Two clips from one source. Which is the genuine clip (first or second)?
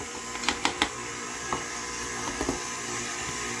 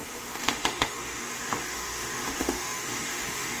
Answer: first